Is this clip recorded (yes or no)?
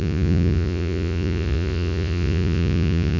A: no